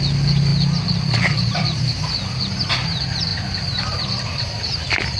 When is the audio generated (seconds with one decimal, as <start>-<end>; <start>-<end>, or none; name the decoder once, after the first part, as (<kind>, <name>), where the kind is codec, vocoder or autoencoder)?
none